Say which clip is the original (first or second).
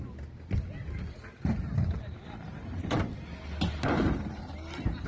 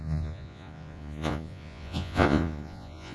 first